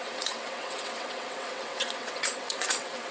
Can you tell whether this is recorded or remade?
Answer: remade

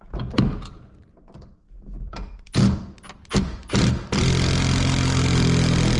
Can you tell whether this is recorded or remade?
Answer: recorded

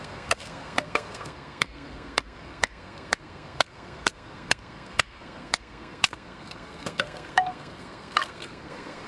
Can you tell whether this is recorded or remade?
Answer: remade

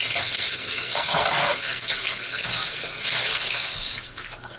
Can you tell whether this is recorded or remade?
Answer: remade